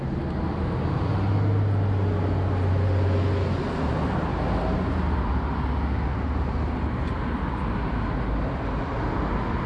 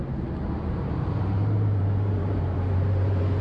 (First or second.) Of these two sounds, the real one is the first